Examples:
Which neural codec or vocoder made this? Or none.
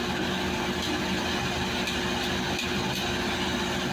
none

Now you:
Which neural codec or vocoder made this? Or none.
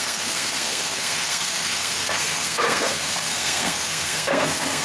codec, SNAC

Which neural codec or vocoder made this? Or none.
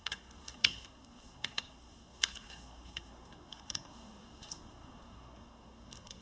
codec, SNAC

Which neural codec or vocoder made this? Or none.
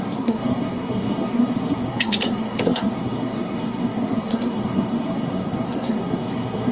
codec, SNAC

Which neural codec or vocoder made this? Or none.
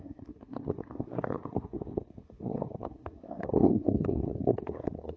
codec, SNAC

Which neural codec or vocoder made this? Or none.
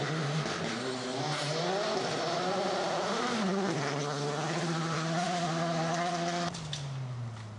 none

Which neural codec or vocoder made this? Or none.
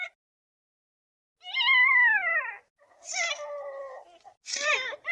none